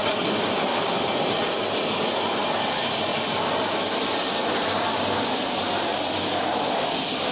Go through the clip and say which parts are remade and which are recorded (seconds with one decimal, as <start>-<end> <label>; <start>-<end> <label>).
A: 0.0-4.4 recorded; 4.4-5.3 remade; 5.3-7.3 recorded